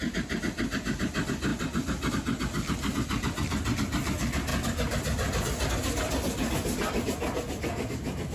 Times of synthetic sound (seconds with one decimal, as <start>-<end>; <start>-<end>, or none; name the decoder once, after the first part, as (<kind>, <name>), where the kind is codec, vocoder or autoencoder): none